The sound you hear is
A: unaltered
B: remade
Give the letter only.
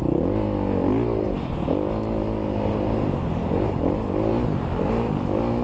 A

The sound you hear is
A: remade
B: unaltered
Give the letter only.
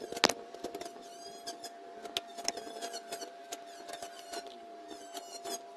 B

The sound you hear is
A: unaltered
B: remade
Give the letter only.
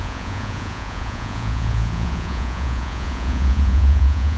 B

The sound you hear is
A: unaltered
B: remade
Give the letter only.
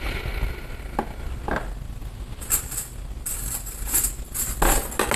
A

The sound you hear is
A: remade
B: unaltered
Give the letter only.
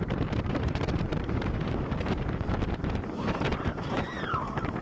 A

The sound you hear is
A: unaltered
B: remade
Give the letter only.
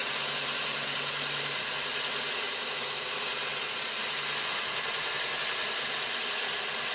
A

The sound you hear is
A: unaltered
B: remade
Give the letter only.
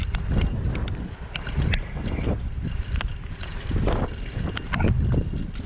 A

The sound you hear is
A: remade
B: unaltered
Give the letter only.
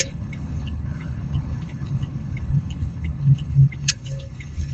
A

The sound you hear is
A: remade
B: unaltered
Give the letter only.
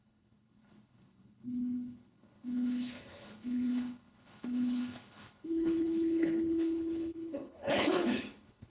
A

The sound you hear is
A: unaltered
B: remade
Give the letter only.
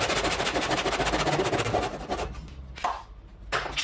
A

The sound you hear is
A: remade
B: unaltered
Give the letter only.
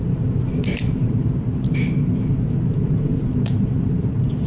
A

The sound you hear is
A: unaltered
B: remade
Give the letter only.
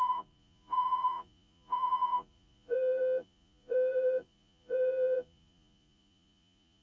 B